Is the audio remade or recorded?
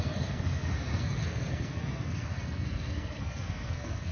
remade